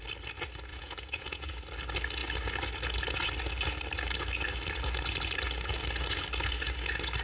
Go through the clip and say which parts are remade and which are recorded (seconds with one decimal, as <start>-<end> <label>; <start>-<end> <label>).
0.0-0.7 recorded; 0.7-1.5 remade; 1.5-7.2 recorded